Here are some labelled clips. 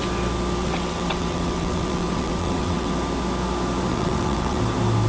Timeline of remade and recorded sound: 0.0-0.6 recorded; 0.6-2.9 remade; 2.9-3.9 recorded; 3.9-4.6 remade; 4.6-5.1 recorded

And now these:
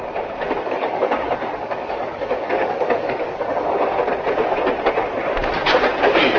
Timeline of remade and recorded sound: 0.0-0.6 recorded; 0.6-3.9 remade; 3.9-6.4 recorded

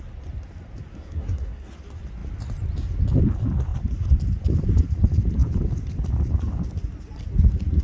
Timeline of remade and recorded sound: 0.0-0.9 recorded; 0.9-1.7 remade; 1.7-7.8 recorded